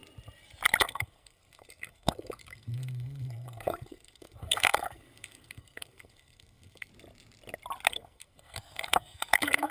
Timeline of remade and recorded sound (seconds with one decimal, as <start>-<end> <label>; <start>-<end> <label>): 0.0-0.8 recorded; 0.8-6.9 remade; 6.9-7.9 recorded; 7.9-9.7 remade

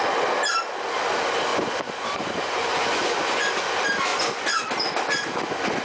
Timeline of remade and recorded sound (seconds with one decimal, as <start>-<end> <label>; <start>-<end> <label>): 0.0-1.5 recorded; 1.5-3.6 remade; 3.6-4.1 recorded; 4.1-4.6 remade; 4.6-5.8 recorded

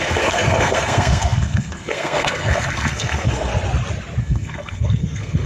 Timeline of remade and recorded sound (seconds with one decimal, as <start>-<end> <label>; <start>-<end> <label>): 0.0-3.5 remade; 3.5-4.2 recorded; 4.2-5.5 remade